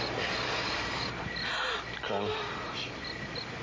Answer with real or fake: real